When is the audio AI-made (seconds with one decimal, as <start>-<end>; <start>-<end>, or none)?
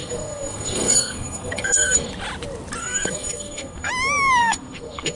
0.0-2.1; 2.8-3.9; 4.4-5.2